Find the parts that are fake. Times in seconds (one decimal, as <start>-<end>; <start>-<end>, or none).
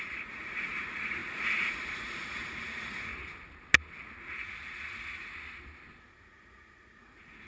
0.0-3.1; 4.2-5.3; 6.0-7.5